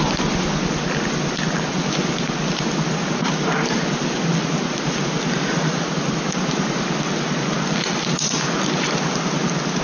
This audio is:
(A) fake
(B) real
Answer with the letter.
B